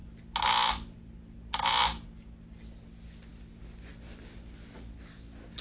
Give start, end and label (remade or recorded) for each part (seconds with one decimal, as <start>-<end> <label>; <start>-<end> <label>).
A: 0.0-5.6 recorded